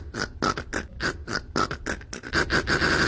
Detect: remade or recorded recorded